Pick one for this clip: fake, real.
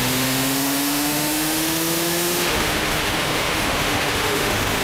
fake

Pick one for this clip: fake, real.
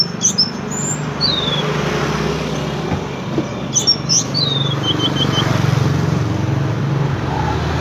real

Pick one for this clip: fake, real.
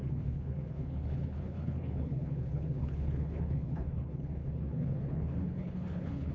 fake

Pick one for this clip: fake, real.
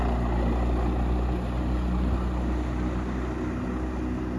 real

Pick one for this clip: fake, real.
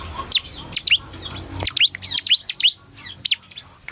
real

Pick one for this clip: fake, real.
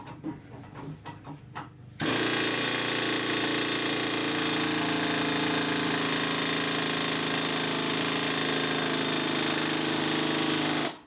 real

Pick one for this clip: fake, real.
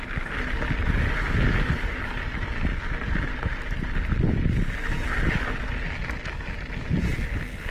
real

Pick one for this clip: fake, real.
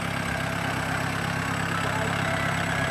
real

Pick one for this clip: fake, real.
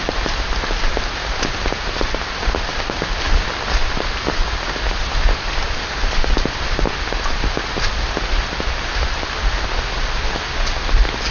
real